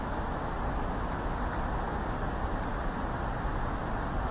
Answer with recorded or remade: recorded